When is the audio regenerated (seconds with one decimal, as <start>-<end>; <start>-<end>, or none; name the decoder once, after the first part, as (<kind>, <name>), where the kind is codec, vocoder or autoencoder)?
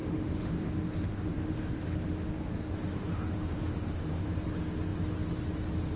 0.0-2.3 (autoencoder, DAC-VAE); 2.9-4.3